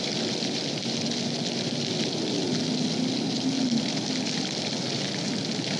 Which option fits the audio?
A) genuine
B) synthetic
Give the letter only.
A